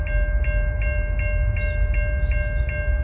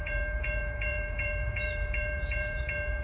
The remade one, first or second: second